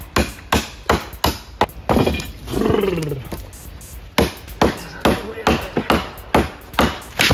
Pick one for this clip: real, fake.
real